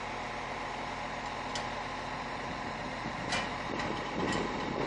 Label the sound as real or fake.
real